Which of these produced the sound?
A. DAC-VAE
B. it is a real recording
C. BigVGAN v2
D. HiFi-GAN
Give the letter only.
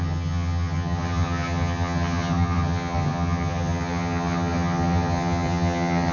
D